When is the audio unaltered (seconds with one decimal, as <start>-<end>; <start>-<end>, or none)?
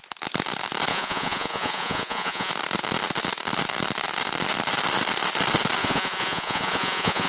0.0-0.9; 2.5-5.8